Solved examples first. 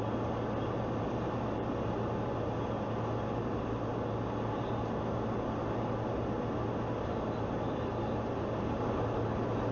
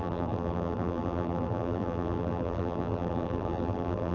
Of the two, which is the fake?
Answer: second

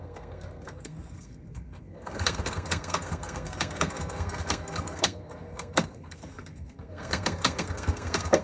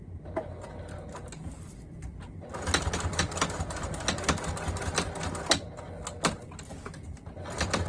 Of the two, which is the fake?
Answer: first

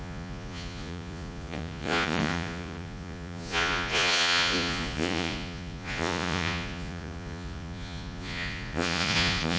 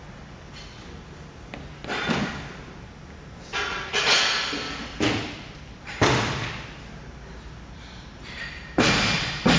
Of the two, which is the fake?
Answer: first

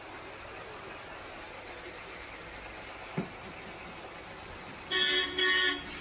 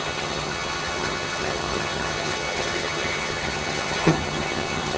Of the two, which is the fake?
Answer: second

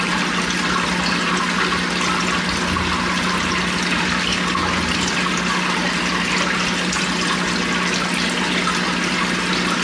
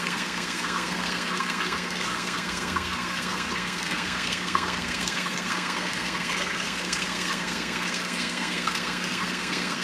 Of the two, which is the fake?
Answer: second